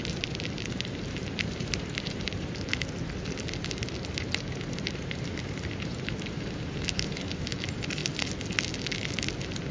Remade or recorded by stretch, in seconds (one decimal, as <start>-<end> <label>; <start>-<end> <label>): 0.0-2.7 remade; 2.7-4.4 recorded; 4.4-8.0 remade; 8.0-9.7 recorded